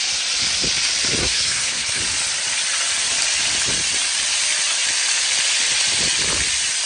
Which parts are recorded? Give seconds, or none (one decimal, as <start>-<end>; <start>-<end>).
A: 0.0-1.2; 2.0-6.9

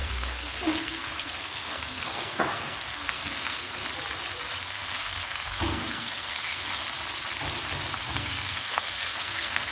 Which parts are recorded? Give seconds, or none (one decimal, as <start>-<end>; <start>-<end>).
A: 3.8-4.6; 6.8-8.0

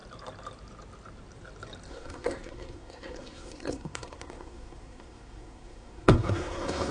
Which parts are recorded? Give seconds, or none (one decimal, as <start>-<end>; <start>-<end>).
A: 0.0-1.9

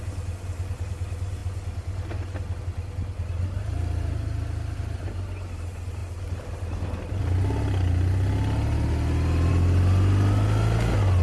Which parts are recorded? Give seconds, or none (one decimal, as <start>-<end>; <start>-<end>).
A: 0.0-11.2

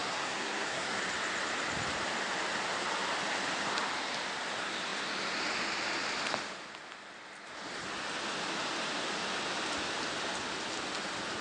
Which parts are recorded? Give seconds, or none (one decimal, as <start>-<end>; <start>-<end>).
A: 1.0-11.4

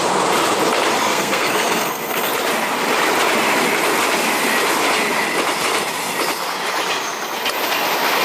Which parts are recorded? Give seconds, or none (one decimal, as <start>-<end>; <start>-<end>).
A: 0.0-1.1; 2.3-8.2

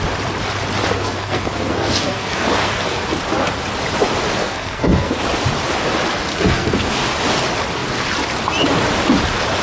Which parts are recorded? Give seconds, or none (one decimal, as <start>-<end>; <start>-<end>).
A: 0.0-0.9; 3.0-4.4; 5.2-6.3; 6.9-9.6

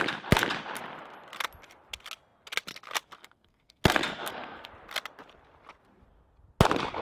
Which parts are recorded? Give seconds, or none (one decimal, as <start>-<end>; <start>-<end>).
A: 0.0-3.2; 4.7-7.0